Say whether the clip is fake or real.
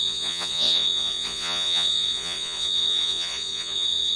fake